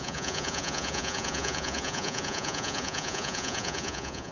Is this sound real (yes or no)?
no